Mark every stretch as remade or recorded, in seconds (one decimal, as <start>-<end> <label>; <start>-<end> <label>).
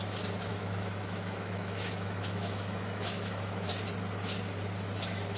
0.0-0.5 recorded; 0.5-3.7 remade; 3.7-5.4 recorded